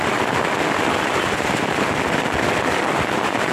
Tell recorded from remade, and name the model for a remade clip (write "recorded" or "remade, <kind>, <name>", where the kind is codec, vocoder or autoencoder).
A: recorded